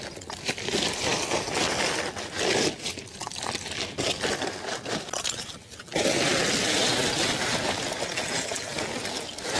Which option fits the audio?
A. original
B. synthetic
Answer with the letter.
A